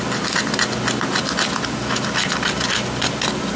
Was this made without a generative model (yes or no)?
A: yes